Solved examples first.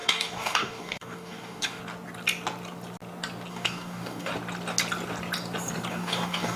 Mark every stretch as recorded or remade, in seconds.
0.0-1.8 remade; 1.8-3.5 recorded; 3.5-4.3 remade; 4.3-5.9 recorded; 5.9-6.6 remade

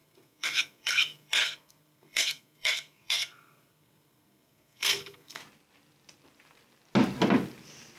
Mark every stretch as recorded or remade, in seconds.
0.0-5.4 remade; 5.4-8.0 recorded

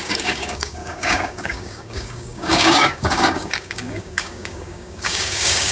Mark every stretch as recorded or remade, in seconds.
0.0-5.7 remade

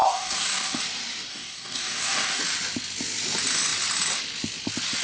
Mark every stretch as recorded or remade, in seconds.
0.0-0.8 remade; 0.8-1.3 recorded; 1.3-2.4 remade; 2.4-5.0 recorded

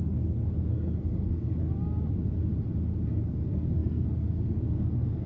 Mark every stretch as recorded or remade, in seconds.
0.0-1.5 remade; 1.5-3.1 recorded; 3.1-5.3 remade

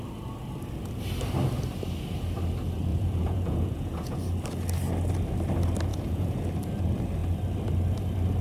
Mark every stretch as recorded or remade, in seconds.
0.0-2.9 recorded; 2.9-4.2 remade; 4.2-5.9 recorded; 5.9-6.4 remade; 6.4-8.4 recorded

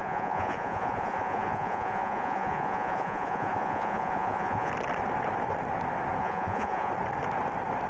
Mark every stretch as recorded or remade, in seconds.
0.0-4.7 remade; 4.7-6.2 recorded; 6.2-6.9 remade; 6.9-7.9 recorded